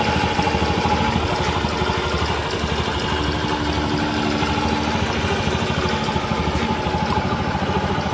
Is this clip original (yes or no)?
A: yes